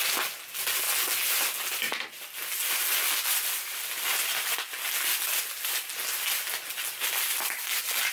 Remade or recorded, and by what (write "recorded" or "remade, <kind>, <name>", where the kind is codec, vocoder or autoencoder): recorded